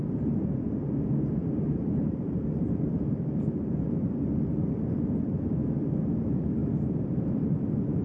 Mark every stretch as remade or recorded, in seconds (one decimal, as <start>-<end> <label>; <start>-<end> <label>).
0.0-1.4 recorded; 1.4-4.4 remade; 4.4-6.6 recorded; 6.6-8.0 remade